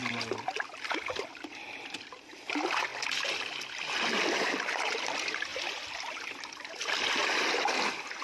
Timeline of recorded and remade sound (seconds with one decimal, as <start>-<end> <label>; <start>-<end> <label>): 0.0-1.3 recorded; 1.3-2.9 remade; 2.9-4.7 recorded; 4.7-5.5 remade; 5.5-6.7 recorded; 6.7-7.2 remade; 7.2-8.2 recorded